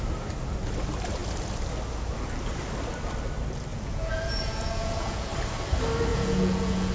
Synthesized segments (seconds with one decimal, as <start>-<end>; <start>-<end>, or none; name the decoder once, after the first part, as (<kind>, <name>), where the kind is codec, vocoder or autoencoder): 3.7-5.3 (vocoder, Vocos); 6.1-6.9